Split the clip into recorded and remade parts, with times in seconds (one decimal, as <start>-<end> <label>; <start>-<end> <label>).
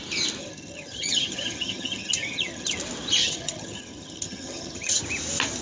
0.0-0.4 recorded; 0.4-2.8 remade; 2.8-3.2 recorded; 3.2-5.0 remade; 5.0-5.6 recorded